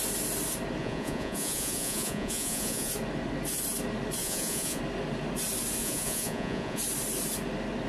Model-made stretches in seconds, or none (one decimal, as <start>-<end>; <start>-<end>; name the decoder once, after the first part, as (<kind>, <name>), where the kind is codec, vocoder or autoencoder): 0.8-2.9 (vocoder, Vocos); 4.2-4.8; 5.8-6.8